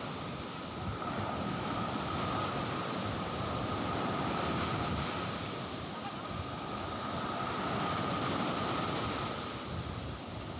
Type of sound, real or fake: real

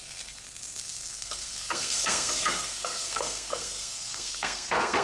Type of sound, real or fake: fake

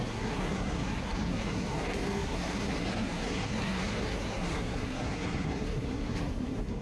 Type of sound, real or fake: fake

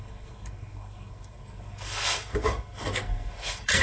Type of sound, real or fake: fake